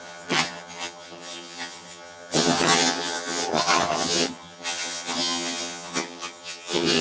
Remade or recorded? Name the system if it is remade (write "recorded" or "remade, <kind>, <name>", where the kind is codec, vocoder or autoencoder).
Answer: remade, vocoder, HiFi-GAN